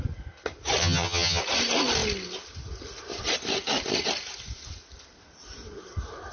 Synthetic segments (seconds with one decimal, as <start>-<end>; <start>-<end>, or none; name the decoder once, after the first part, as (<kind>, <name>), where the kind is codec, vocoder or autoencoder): 0.8-1.4 (vocoder, HiFi-GAN)

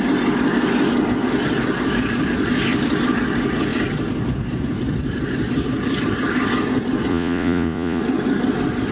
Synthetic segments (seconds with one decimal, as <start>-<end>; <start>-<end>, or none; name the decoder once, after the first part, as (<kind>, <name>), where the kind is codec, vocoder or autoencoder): 7.1-8.0 (vocoder, Vocos)

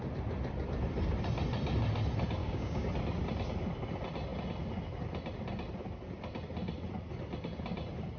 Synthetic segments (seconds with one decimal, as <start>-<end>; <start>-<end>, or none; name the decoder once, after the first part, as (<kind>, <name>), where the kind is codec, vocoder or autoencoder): 2.4-2.9 (codec, DAC)

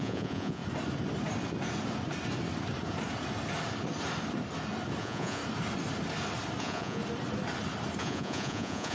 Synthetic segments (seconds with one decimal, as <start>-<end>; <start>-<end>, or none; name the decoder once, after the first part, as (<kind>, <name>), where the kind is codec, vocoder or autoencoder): 0.0-0.6 (vocoder, Vocos); 5.0-5.4; 6.6-7.0; 8.0-8.9